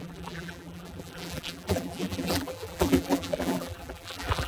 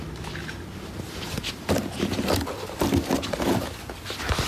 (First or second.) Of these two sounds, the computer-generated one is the first